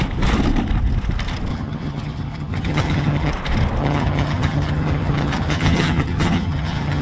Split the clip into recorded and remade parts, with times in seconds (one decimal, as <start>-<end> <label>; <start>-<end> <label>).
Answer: 0.0-1.5 recorded; 1.5-3.3 remade; 3.3-3.8 recorded; 3.8-7.0 remade